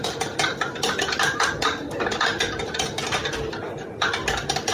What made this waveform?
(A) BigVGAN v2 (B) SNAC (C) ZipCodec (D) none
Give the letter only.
D